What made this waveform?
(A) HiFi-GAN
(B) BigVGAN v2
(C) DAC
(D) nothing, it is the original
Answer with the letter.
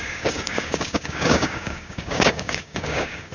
C